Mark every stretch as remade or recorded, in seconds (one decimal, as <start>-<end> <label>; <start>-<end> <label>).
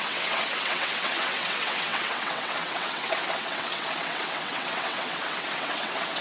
0.0-6.2 remade